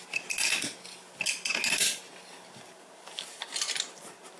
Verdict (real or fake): real